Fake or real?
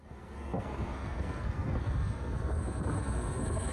fake